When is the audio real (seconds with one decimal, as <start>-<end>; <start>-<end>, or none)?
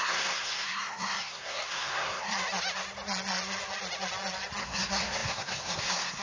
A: 2.3-4.6